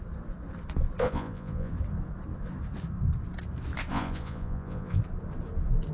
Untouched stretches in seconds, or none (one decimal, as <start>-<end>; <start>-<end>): 0.0-1.0; 1.7-3.9; 5.0-5.9